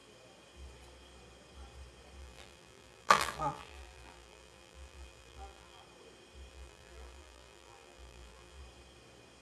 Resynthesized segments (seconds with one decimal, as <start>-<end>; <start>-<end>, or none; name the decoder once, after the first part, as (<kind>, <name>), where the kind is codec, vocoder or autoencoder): 2.2-5.8 (vocoder, BigVGAN v2); 6.5-8.6